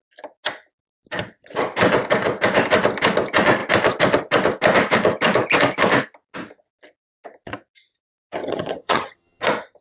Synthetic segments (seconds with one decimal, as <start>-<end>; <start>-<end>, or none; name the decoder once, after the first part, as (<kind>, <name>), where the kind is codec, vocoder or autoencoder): 8.4-9.4 (vocoder, HiFi-GAN)